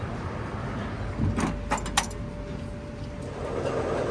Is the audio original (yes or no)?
yes